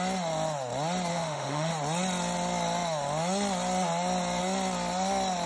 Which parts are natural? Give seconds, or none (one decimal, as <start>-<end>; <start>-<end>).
0.0-1.1; 1.7-5.5